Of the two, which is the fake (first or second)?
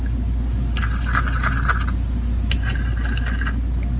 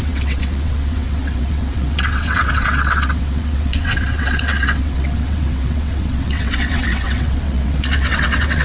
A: second